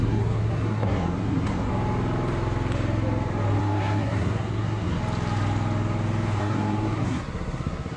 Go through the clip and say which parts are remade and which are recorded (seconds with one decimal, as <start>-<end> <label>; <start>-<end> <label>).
0.0-1.7 remade; 1.7-3.6 recorded; 3.6-5.0 remade; 5.0-6.4 recorded; 6.4-8.0 remade